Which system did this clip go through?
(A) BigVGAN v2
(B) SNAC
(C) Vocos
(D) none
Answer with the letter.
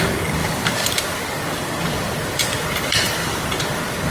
A